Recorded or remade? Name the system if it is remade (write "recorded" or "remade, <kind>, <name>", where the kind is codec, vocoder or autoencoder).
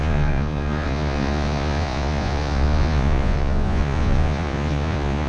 remade, vocoder, Vocos